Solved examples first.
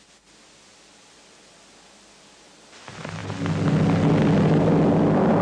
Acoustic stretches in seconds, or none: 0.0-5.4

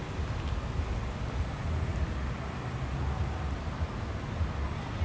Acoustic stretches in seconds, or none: 0.0-5.0

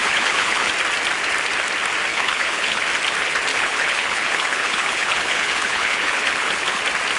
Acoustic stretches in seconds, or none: 0.7-2.1; 2.8-3.5; 6.8-7.2

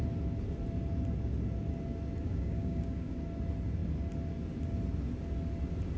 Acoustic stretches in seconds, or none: 0.0-2.2; 3.2-6.0